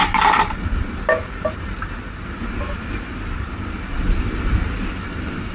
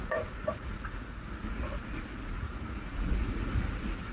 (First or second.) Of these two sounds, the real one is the first